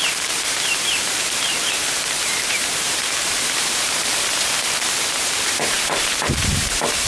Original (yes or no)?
no